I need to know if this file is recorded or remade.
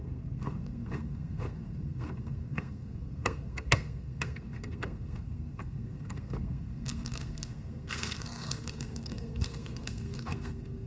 remade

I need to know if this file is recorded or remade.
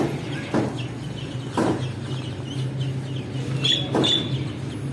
recorded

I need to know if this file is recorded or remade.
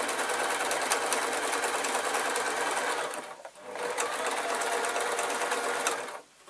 recorded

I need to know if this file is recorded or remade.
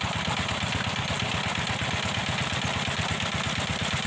recorded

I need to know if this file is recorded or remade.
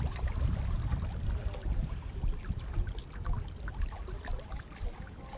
recorded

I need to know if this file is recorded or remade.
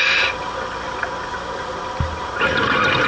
recorded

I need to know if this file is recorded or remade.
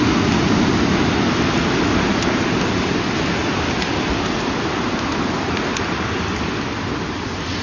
recorded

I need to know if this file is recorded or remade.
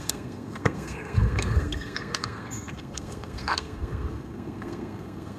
remade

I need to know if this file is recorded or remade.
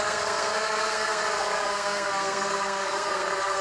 remade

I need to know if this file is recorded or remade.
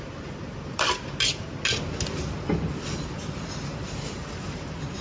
recorded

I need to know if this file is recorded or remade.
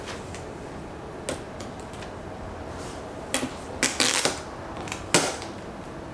recorded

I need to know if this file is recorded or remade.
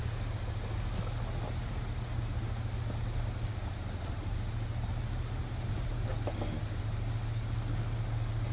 recorded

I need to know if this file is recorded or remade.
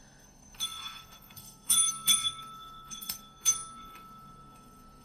remade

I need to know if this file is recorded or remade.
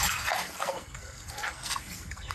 remade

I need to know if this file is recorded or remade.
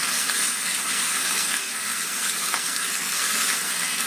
remade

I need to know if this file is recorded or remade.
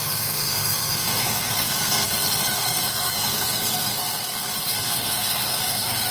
remade